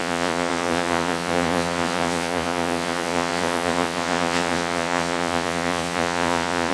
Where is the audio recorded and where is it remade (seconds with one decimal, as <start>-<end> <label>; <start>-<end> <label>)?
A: 0.0-6.7 remade